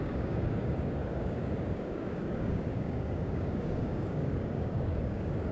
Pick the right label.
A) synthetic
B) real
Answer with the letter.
A